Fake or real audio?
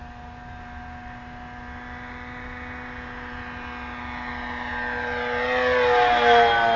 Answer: real